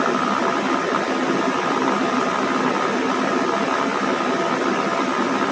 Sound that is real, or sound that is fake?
real